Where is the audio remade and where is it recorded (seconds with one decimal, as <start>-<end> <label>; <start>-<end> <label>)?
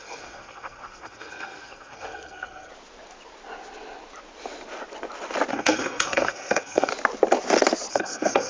0.0-2.7 remade; 2.7-5.5 recorded; 5.5-6.9 remade; 6.9-7.9 recorded; 7.9-8.5 remade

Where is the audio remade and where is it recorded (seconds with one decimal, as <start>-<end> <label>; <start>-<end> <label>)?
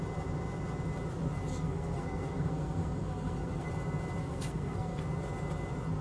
0.0-1.5 recorded; 1.5-3.7 remade; 3.7-4.2 recorded; 4.2-5.0 remade; 5.0-6.0 recorded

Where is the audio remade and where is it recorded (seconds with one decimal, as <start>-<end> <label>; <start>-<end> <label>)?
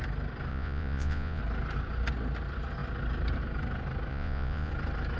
0.0-0.5 recorded; 0.5-1.4 remade; 1.4-4.1 recorded; 4.1-4.7 remade; 4.7-5.2 recorded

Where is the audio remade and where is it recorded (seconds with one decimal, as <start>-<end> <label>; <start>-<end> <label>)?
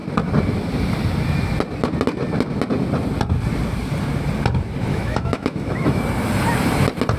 0.0-4.9 recorded; 4.9-6.0 remade; 6.0-7.2 recorded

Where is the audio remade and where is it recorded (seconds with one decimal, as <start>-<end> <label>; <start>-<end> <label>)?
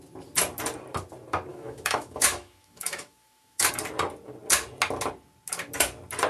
0.0-1.5 recorded; 1.5-3.7 remade; 3.7-6.3 recorded